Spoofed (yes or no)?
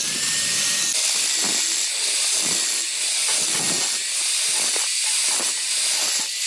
no